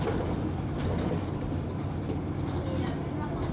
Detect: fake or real fake